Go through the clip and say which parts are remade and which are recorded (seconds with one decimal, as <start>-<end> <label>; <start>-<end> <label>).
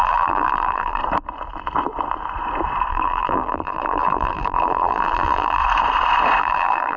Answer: 0.0-1.0 remade; 1.0-2.9 recorded; 2.9-5.6 remade; 5.6-6.4 recorded; 6.4-7.0 remade